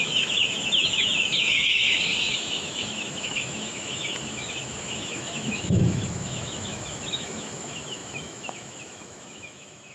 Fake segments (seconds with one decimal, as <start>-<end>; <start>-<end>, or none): 0.0-9.9